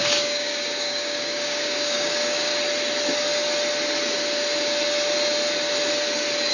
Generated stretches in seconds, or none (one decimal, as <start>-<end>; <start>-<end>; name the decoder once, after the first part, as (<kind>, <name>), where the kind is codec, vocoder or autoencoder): 0.0-2.5 (codec, DAC)